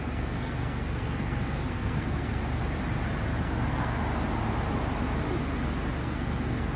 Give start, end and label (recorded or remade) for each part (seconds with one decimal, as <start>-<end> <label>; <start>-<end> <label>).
0.0-2.4 remade; 2.4-3.4 recorded; 3.4-4.0 remade; 4.0-6.0 recorded; 6.0-6.8 remade